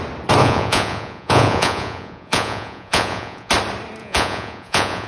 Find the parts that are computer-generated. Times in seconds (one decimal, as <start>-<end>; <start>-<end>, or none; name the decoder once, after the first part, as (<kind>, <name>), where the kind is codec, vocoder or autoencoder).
0.4-3.5 (vocoder, Vocos); 4.0-5.1